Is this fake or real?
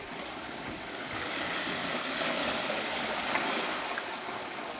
fake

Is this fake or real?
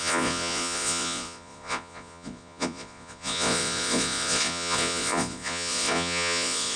fake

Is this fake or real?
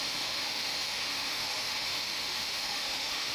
fake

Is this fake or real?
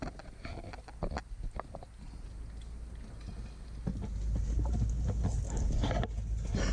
real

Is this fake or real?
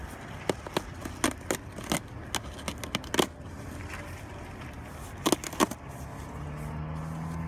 real